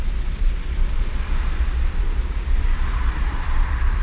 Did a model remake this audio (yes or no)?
yes